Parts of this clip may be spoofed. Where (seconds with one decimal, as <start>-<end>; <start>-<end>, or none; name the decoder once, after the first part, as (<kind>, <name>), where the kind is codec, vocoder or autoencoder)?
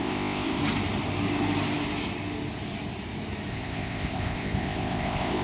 0.0-0.6 (codec, ZipCodec); 3.5-5.4